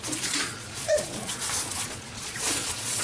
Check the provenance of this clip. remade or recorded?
remade